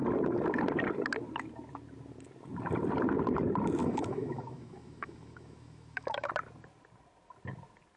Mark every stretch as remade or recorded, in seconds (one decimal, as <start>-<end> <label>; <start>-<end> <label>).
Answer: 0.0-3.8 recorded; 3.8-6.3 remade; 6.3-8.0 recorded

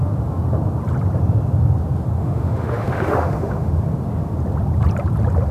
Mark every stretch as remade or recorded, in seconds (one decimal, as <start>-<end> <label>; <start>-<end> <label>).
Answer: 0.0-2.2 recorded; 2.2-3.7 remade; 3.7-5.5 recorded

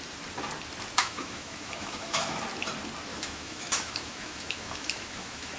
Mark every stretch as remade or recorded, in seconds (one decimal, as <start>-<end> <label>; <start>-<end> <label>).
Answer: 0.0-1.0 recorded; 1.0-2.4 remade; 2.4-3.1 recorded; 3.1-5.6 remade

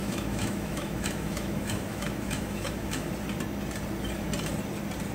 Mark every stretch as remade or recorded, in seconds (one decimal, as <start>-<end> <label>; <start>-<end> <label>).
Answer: 0.0-3.1 remade; 3.1-5.1 recorded

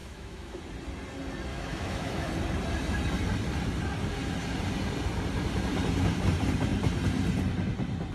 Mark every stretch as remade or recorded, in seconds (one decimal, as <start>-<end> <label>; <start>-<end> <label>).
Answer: 0.0-0.6 remade; 0.6-1.5 recorded; 1.5-2.3 remade; 2.3-8.1 recorded

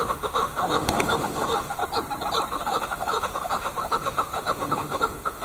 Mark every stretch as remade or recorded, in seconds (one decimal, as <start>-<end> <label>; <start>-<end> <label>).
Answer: 0.0-1.8 remade; 1.8-2.5 recorded; 2.5-5.4 remade